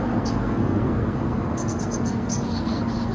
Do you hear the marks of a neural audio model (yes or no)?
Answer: yes